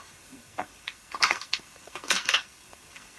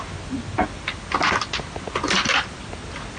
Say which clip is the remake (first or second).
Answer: first